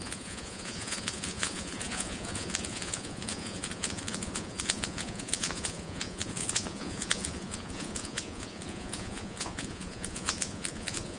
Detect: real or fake fake